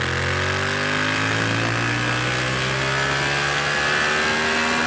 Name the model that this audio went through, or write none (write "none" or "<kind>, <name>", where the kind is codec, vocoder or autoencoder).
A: none